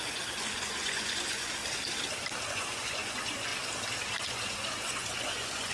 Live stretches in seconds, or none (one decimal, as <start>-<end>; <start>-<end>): 1.6-2.5; 3.5-4.2